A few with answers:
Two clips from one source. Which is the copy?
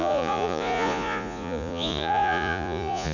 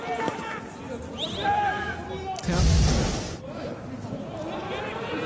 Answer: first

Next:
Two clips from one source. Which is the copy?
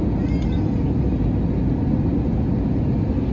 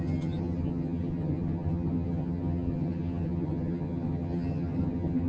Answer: second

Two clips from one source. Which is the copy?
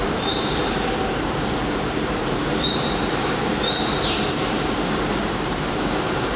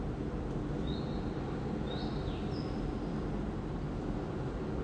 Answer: first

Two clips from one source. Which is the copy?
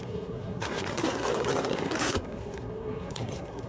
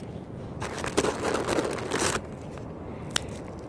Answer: first